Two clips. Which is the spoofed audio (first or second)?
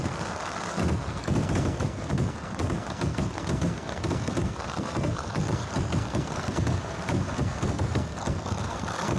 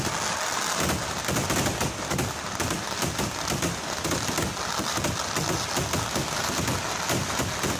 first